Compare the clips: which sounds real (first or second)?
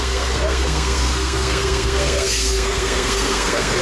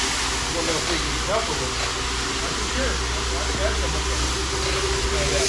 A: second